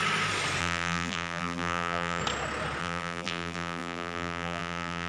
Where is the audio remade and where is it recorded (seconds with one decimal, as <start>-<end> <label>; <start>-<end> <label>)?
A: 0.0-0.6 recorded; 0.6-2.2 remade; 2.2-2.8 recorded; 2.8-5.1 remade